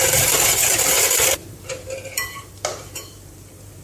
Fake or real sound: fake